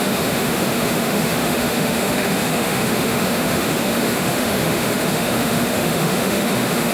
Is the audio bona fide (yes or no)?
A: no